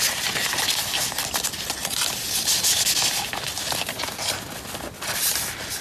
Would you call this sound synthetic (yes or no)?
no